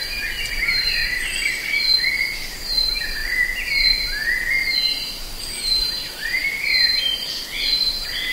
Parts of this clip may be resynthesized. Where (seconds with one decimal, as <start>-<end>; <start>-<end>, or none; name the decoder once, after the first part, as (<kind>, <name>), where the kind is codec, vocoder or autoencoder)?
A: 0.0-1.0 (vocoder, BigVGAN v2); 2.1-3.2; 5.4-6.4; 7.9-8.3